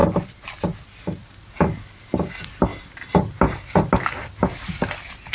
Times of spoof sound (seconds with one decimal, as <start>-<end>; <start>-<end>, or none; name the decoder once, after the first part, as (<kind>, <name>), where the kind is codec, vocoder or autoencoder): none

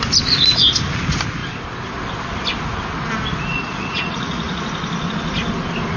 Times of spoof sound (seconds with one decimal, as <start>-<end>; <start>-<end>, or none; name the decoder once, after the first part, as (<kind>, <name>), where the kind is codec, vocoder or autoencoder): 3.5-4.5 (vocoder, Vocos)